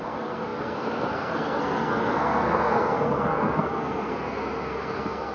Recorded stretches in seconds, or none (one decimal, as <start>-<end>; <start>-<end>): none